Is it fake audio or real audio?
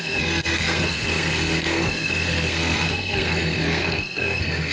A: fake